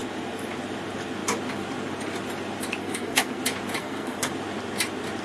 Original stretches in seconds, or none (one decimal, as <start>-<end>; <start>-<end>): 0.0-2.8; 3.4-3.8; 4.3-5.2